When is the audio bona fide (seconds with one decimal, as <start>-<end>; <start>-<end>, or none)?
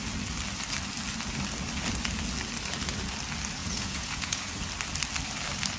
0.0-3.6; 4.5-5.8